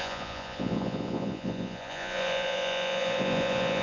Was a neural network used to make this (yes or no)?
yes